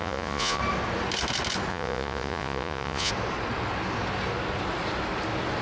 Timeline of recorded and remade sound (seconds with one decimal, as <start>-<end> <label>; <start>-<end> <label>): 0.0-0.6 remade; 0.6-1.7 recorded; 1.7-3.1 remade; 3.1-5.6 recorded